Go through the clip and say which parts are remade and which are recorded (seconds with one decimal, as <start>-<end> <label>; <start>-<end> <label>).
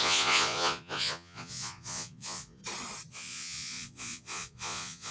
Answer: 0.0-2.6 remade; 2.6-3.1 recorded; 3.1-5.1 remade